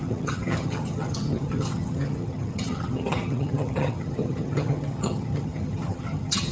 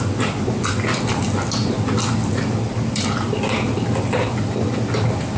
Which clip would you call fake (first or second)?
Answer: first